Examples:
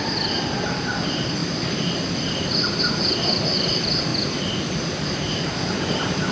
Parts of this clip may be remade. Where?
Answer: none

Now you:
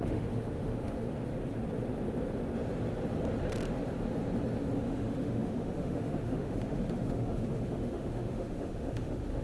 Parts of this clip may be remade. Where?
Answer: 0.0-1.2 (autoencoder, DAC-VAE); 4.8-9.4

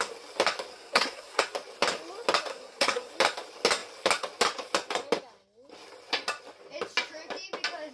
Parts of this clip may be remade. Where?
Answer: 0.7-1.4 (codec, SNAC); 2.5-3.1